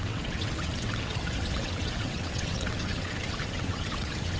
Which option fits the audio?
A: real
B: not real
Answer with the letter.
B